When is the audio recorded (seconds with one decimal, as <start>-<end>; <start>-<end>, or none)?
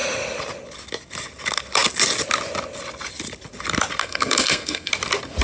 0.0-4.0; 4.9-5.4